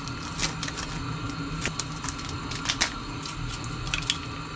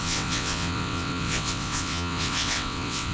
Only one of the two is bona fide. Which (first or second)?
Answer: first